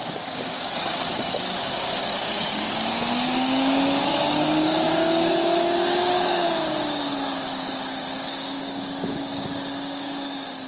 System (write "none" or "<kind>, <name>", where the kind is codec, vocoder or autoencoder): codec, DAC